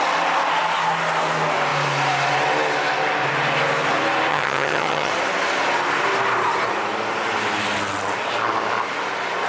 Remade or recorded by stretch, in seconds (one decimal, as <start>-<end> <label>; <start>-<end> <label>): 0.0-4.3 recorded; 4.3-5.1 remade; 5.1-9.5 recorded